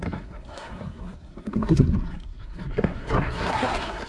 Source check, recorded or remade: remade